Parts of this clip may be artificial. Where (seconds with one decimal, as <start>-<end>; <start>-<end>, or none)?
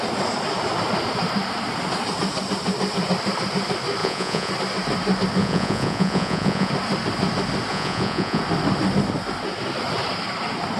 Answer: 4.0-4.5; 5.4-6.7; 7.7-8.4